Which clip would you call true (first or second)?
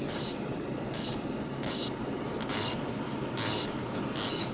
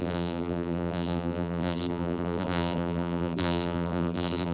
first